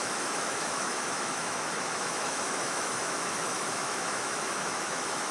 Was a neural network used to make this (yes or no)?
yes